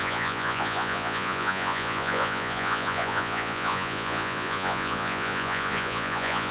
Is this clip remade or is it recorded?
remade